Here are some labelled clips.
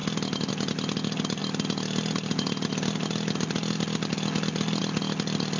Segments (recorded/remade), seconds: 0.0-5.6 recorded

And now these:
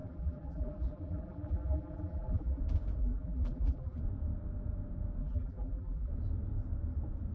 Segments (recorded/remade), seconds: 0.0-2.6 remade; 2.6-3.0 recorded; 3.0-4.0 remade; 4.0-5.2 recorded; 5.2-6.1 remade; 6.1-7.3 recorded

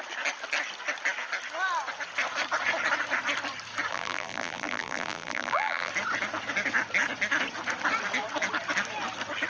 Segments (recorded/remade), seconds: 0.0-3.9 recorded; 3.9-5.9 remade; 5.9-9.5 recorded

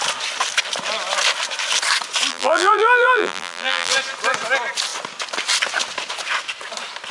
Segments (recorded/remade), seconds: 0.0-2.3 recorded; 2.3-3.9 remade; 3.9-7.1 recorded

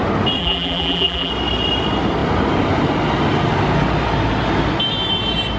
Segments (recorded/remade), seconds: 0.0-0.4 recorded; 0.4-1.3 remade; 1.3-5.6 recorded

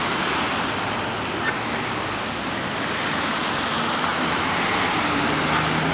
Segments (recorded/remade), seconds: 0.0-4.1 recorded; 4.1-4.7 remade; 4.7-5.9 recorded

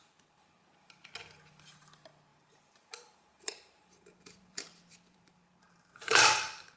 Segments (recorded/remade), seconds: 0.0-2.3 recorded; 2.3-6.8 remade

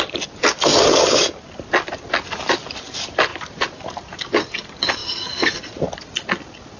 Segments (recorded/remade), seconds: 0.0-3.3 recorded; 3.3-4.2 remade; 4.2-5.0 recorded; 5.0-5.9 remade; 5.9-6.8 recorded